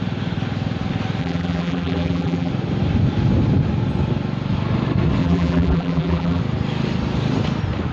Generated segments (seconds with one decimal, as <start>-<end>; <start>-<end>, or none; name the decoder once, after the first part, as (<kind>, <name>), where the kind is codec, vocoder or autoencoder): 1.2-2.5 (vocoder, BigVGAN v2); 5.2-6.4